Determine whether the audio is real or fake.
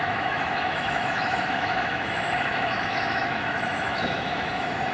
fake